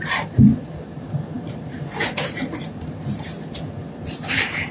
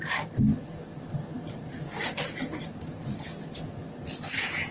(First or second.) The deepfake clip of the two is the first